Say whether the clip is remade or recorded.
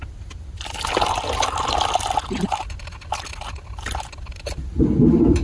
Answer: recorded